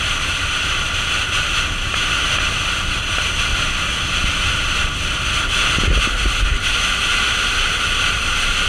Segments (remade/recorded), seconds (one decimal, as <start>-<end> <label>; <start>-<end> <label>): 0.0-8.7 recorded